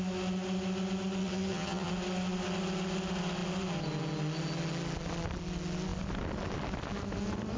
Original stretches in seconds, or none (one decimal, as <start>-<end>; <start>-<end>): 0.0-1.2; 1.9-7.6